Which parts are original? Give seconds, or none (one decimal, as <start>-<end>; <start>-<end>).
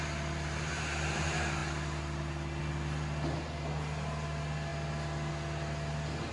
0.0-6.3